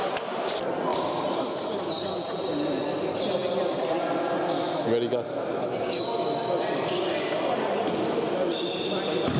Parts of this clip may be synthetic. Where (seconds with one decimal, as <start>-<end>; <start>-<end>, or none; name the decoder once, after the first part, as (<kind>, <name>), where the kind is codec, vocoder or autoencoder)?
none